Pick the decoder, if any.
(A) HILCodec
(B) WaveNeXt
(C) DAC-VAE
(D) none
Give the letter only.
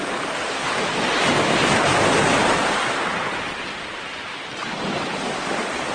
D